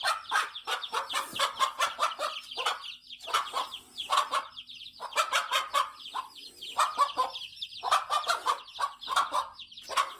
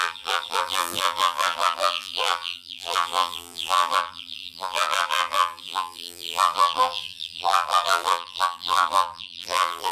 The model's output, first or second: second